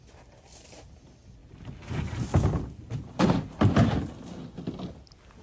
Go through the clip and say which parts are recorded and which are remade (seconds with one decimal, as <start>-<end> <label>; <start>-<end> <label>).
0.0-5.4 recorded